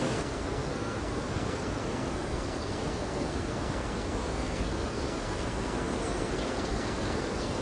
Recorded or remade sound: remade